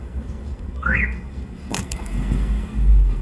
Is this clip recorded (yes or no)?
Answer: no